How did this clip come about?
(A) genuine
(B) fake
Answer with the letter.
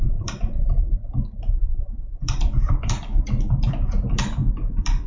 B